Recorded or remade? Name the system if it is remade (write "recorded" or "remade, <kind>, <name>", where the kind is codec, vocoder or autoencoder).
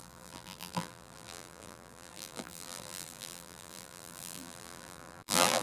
remade, vocoder, BigVGAN v2